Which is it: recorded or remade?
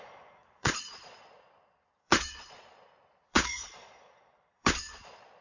remade